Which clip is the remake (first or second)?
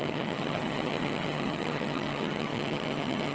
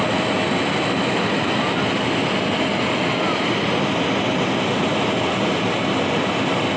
first